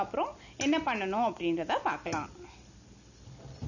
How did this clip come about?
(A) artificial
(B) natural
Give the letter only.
B